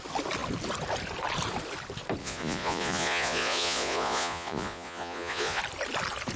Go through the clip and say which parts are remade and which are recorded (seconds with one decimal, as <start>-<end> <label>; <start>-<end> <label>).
0.0-2.2 recorded; 2.2-5.6 remade; 5.6-6.4 recorded